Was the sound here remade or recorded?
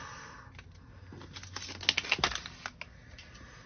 recorded